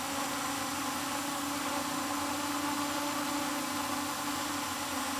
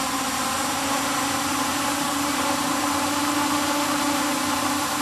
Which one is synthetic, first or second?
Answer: second